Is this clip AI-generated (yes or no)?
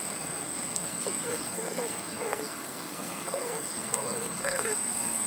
yes